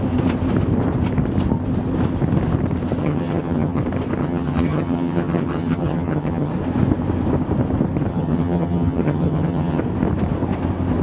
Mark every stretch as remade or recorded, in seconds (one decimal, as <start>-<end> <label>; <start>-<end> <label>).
0.0-3.0 recorded; 3.0-3.8 remade; 3.8-4.2 recorded; 4.2-6.5 remade; 6.5-8.1 recorded; 8.1-9.8 remade; 9.8-11.0 recorded